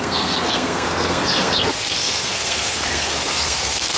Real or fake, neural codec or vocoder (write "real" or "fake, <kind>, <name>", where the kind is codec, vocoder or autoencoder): fake, codec, SNAC